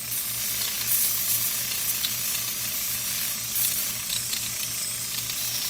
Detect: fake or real real